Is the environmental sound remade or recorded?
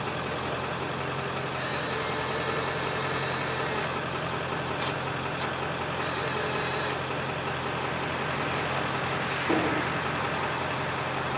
recorded